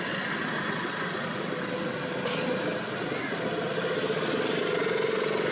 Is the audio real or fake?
real